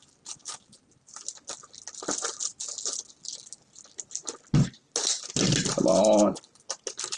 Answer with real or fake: real